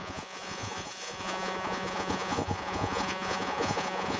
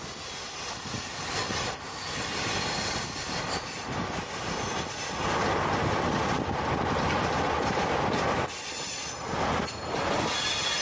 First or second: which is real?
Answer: second